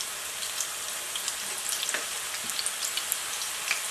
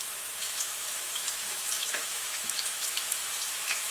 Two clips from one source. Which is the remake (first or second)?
second